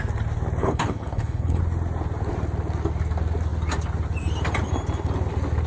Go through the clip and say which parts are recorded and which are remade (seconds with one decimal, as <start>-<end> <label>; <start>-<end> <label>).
0.0-0.6 recorded; 0.6-1.6 remade; 1.6-5.7 recorded